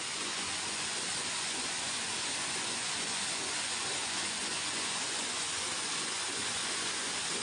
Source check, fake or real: fake